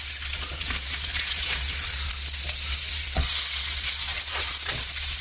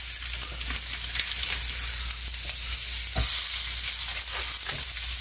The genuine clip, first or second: second